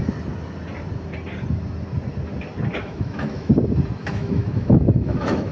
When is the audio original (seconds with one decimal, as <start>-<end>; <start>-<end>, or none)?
0.0-2.8; 3.5-4.0